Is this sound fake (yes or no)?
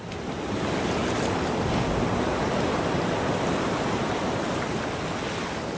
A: no